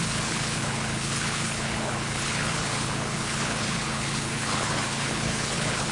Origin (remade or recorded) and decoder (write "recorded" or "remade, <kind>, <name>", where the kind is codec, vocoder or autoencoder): remade, codec, HILCodec